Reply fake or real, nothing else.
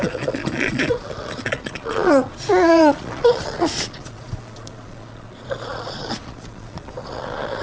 fake